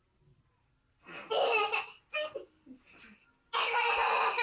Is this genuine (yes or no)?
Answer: yes